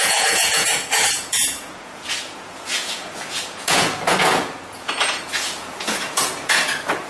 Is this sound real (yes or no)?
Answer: no